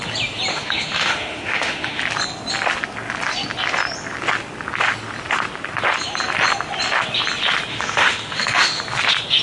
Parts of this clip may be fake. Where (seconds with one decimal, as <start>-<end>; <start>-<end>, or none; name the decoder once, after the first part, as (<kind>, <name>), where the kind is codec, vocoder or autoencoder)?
0.5-2.0 (autoencoder, DAC-VAE); 7.7-8.8